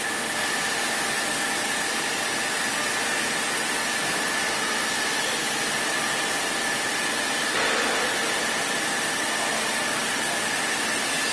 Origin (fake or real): real